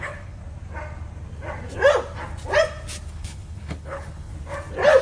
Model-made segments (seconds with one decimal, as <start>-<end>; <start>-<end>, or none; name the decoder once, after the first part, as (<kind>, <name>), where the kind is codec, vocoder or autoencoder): 0.0-0.4 (codec, HILCodec); 3.1-4.3